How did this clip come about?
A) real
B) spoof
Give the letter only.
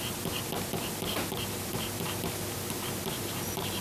A